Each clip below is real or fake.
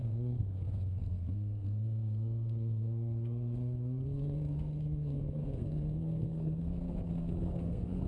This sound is fake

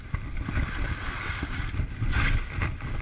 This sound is real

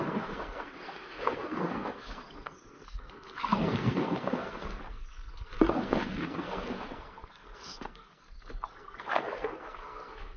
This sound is fake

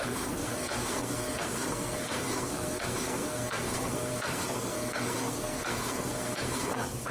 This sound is fake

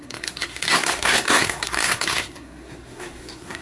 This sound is fake